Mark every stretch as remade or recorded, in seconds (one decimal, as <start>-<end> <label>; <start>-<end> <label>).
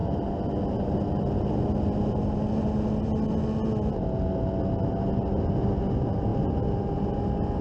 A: 0.0-7.6 recorded